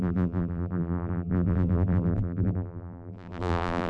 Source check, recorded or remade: remade